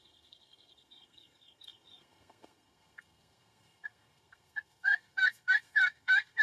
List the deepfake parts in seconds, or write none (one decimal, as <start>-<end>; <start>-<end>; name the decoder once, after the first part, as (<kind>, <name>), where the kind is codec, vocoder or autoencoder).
0.0-6.4 (codec, SNAC)